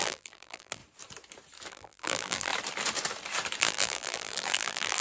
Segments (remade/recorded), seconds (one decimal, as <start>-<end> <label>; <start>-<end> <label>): 0.0-0.8 remade; 0.8-1.7 recorded; 1.7-2.5 remade; 2.5-3.6 recorded; 3.6-5.0 remade

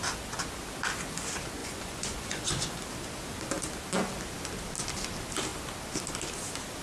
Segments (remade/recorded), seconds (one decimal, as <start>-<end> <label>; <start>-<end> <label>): 0.0-1.6 recorded; 1.6-2.8 remade; 2.8-6.8 recorded

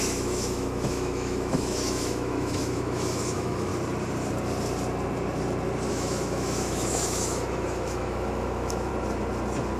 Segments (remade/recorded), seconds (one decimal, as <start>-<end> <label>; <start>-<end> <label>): 0.0-3.7 remade; 3.7-5.9 recorded; 5.9-8.9 remade; 8.9-9.8 recorded

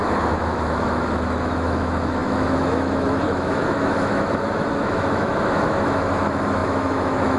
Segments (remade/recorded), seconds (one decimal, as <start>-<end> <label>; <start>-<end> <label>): 0.0-7.4 remade

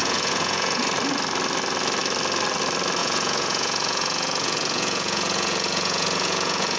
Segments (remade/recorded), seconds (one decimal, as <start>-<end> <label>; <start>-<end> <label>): 0.0-0.8 remade; 0.8-3.0 recorded; 3.0-6.8 remade

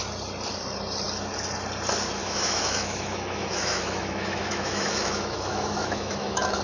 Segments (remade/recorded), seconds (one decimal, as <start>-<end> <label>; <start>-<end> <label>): 0.0-2.2 recorded; 2.2-6.6 remade

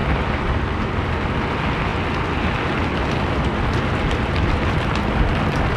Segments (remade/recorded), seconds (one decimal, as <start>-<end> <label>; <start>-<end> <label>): 0.0-5.8 recorded